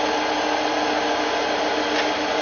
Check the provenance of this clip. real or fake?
real